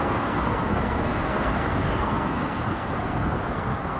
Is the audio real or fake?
fake